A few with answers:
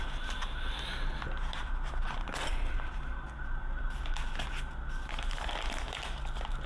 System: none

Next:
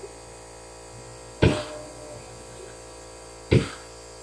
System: none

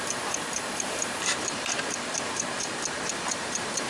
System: vocoder, BigVGAN v2